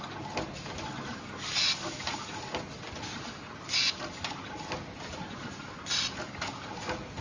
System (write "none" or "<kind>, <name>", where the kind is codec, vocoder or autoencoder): none